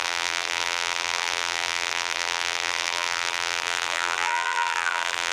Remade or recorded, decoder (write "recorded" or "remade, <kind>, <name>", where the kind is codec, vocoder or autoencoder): remade, vocoder, BigVGAN v2